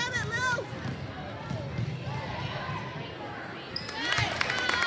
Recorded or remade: recorded